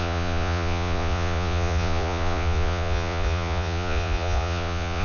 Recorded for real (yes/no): no